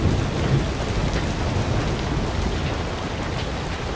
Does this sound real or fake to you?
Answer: fake